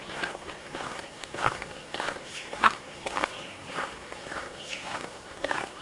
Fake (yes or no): yes